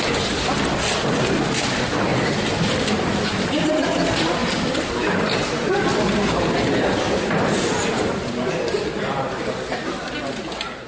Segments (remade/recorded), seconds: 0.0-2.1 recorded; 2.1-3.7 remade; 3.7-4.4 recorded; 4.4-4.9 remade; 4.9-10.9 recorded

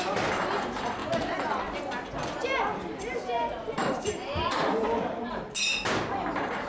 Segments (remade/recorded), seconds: 0.0-3.8 recorded; 3.8-5.3 remade; 5.3-6.7 recorded

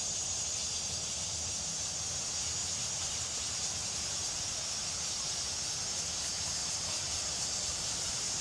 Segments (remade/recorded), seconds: 0.0-2.6 recorded; 2.6-4.4 remade; 4.4-6.6 recorded; 6.6-8.4 remade

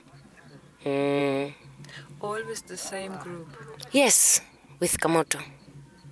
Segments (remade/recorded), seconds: 0.0-1.2 recorded; 1.2-3.1 remade; 3.1-6.1 recorded